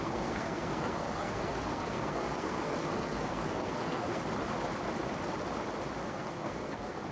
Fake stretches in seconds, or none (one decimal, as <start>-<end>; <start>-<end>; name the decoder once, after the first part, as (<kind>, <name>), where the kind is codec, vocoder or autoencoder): 0.0-4.2 (codec, SNAC); 6.0-7.1